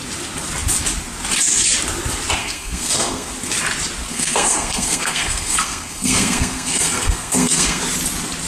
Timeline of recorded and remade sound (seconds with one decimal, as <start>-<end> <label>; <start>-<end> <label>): 0.0-2.4 recorded; 2.4-3.3 remade; 3.3-4.1 recorded; 4.1-7.8 remade; 7.8-8.5 recorded